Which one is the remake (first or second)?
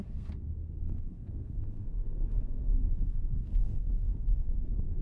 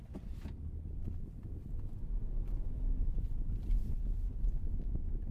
first